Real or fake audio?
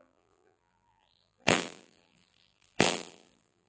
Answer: fake